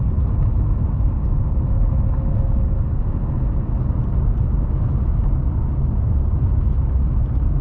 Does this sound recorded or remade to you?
recorded